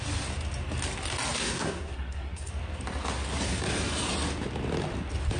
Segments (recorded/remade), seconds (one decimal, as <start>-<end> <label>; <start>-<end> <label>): 0.0-1.4 recorded; 1.4-2.5 remade; 2.5-5.4 recorded